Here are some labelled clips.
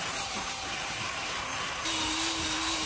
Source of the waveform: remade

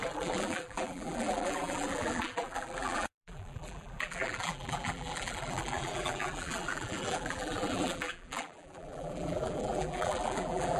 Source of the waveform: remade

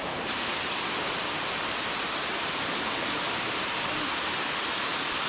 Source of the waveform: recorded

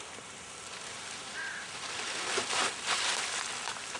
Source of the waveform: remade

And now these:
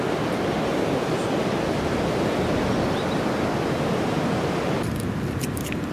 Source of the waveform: recorded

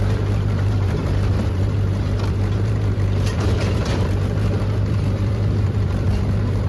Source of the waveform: remade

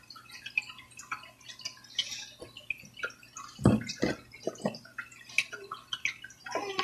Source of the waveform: recorded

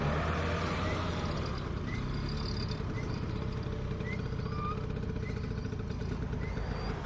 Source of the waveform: recorded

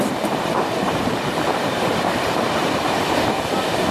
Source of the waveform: remade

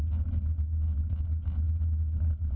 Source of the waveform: recorded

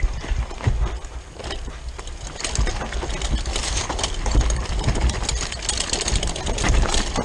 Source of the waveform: recorded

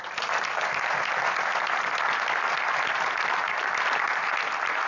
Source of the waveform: recorded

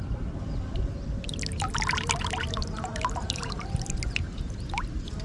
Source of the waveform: remade